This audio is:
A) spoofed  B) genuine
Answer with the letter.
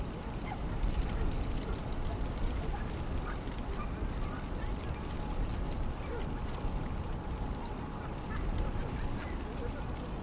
B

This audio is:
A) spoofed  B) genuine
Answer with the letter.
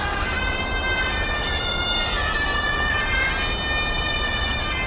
B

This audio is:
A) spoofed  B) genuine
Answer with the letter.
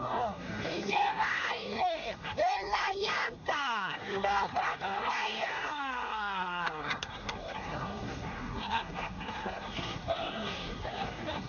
A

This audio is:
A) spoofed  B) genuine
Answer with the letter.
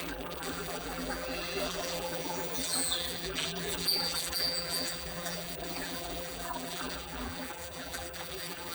A